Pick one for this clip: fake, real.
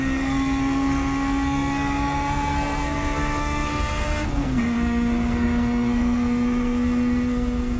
fake